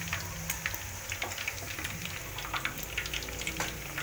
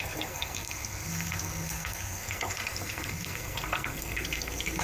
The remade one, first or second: second